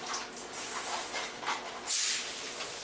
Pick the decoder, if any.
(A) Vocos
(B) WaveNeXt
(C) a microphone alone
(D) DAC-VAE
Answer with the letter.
C